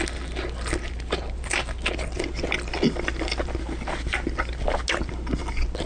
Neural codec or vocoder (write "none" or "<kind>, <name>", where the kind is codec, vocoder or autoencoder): none